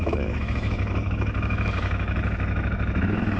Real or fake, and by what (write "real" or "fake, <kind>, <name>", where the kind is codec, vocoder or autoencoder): fake, autoencoder, DAC-VAE